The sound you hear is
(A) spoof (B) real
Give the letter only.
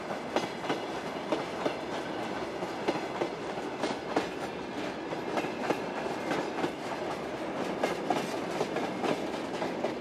B